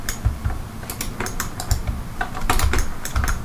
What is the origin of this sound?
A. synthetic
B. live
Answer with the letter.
A